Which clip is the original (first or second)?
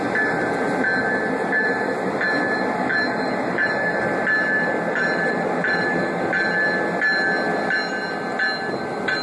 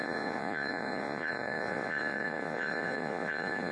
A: first